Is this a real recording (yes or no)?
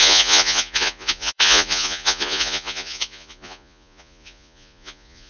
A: no